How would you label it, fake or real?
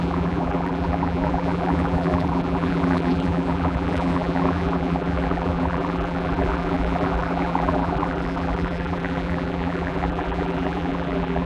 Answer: fake